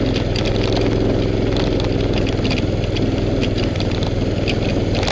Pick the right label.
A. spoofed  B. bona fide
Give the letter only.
B